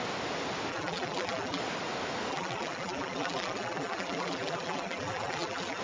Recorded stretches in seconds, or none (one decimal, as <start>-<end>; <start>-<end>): 0.0-0.7; 1.6-2.3